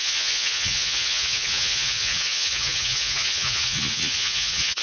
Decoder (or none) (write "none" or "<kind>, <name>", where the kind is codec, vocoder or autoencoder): vocoder, Vocos